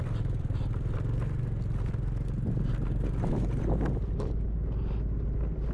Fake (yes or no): no